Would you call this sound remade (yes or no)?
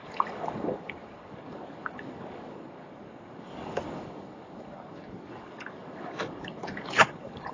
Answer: yes